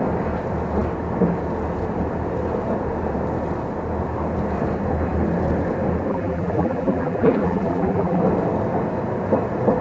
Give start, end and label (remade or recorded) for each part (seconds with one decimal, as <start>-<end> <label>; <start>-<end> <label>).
0.0-6.1 recorded; 6.1-8.2 remade; 8.2-9.8 recorded